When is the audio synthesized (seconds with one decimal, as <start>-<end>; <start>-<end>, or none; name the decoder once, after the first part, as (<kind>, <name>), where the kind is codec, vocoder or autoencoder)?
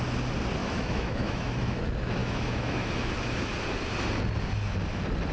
0.6-1.8 (autoencoder, DAC-VAE); 2.2-3.5